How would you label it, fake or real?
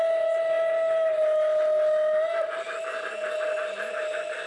real